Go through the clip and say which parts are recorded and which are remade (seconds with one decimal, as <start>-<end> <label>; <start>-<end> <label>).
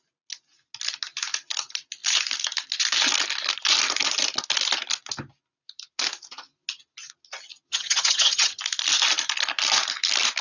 0.0-7.7 recorded; 7.7-8.6 remade; 8.6-10.4 recorded